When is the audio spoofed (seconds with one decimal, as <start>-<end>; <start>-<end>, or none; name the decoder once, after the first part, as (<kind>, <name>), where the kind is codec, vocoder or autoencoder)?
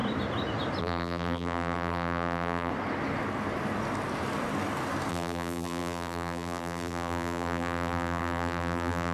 0.8-2.7 (vocoder, BigVGAN v2); 5.1-9.1